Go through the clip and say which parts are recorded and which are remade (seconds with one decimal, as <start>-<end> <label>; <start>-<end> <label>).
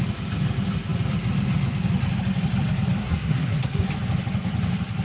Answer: 0.0-3.0 recorded; 3.0-3.9 remade; 3.9-5.0 recorded